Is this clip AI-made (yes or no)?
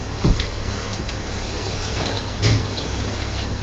yes